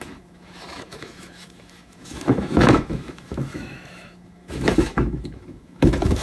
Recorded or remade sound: remade